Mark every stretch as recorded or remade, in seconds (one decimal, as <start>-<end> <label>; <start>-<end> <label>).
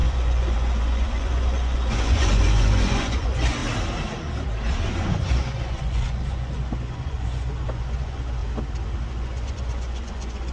0.0-3.6 remade; 3.6-4.8 recorded; 4.8-8.4 remade; 8.4-9.1 recorded; 9.1-10.5 remade